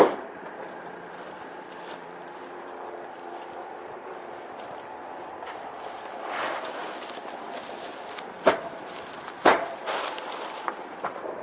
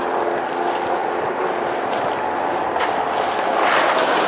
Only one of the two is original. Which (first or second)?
second